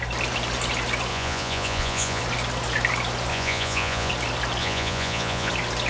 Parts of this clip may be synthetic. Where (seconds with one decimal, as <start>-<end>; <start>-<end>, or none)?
1.1-2.2; 3.3-4.1; 4.6-5.5